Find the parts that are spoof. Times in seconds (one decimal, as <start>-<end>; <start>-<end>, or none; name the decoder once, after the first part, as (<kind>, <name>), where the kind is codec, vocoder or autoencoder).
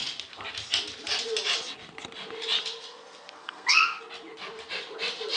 3.4-4.0 (codec, SNAC)